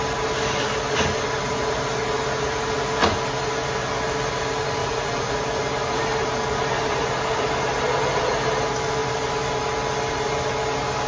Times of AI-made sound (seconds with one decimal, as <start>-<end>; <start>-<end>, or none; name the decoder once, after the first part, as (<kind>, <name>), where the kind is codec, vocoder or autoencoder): 4.8-5.4 (vocoder, Vocos)